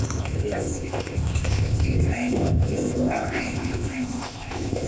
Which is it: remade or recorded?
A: remade